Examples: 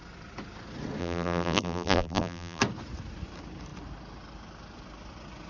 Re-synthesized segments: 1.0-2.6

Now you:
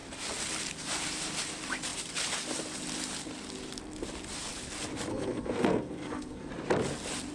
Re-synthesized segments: 5.1-6.5

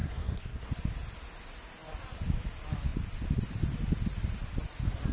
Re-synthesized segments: 0.0-0.7

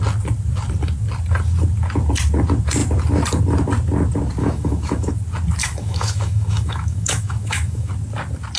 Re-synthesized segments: 4.4-5.1; 5.6-7.9